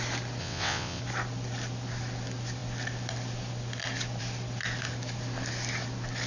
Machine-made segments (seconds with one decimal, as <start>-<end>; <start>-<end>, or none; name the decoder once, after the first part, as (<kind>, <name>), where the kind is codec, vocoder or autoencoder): 0.4-1.0 (vocoder, WaveNeXt)